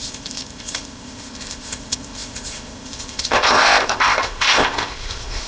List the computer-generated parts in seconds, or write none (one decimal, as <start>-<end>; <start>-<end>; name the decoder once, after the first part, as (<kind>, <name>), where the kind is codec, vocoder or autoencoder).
0.0-5.5 (codec, ZipCodec)